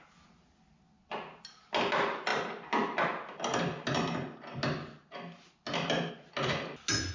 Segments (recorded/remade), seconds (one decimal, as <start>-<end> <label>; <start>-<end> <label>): 0.0-7.1 recorded